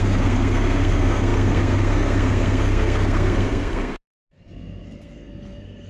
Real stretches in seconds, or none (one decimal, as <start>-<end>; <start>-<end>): none